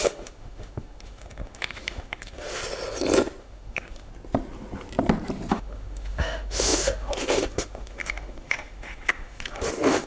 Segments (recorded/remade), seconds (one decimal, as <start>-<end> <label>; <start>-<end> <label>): 0.0-2.6 remade; 2.6-3.4 recorded; 3.4-4.1 remade; 4.1-5.5 recorded; 5.5-10.1 remade